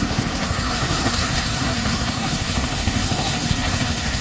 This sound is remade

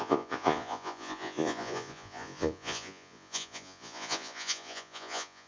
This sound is remade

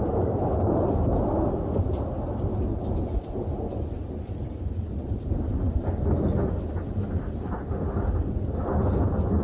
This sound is recorded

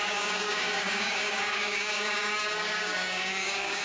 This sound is remade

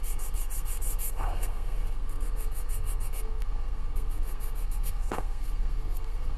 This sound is remade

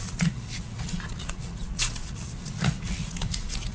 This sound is remade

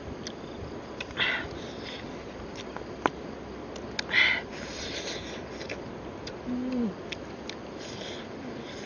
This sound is recorded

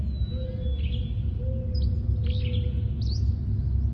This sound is recorded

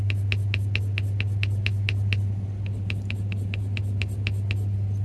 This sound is recorded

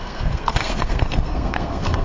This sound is remade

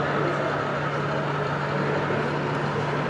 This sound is recorded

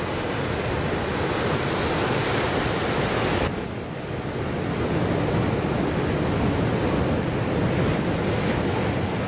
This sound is recorded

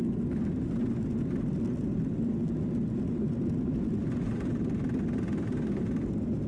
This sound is recorded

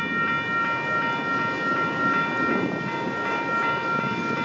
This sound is recorded